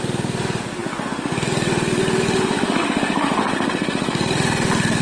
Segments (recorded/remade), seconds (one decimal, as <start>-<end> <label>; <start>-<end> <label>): 0.0-5.0 recorded

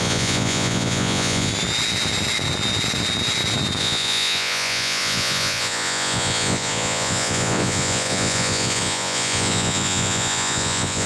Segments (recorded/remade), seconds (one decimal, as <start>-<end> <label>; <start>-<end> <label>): 0.0-1.5 remade; 1.5-3.8 recorded; 3.8-11.1 remade

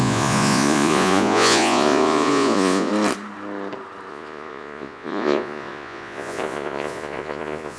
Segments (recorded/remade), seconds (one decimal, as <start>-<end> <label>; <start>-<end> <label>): 0.0-2.9 remade; 2.9-4.1 recorded; 4.1-7.8 remade

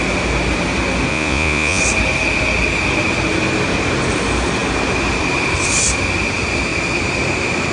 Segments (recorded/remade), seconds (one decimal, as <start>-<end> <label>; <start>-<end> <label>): 0.0-1.1 recorded; 1.1-1.8 remade; 1.8-7.7 recorded

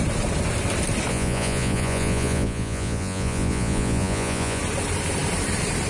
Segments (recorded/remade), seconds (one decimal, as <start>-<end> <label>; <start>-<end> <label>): 0.0-1.1 recorded; 1.1-4.6 remade; 4.6-5.9 recorded

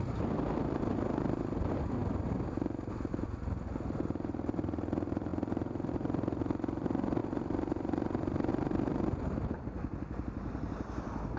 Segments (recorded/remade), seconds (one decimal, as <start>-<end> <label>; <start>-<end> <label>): 0.0-11.4 recorded